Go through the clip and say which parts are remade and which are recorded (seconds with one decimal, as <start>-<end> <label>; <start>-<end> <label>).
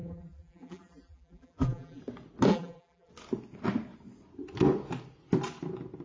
0.0-2.0 remade; 2.0-2.5 recorded; 2.5-3.1 remade; 3.1-6.0 recorded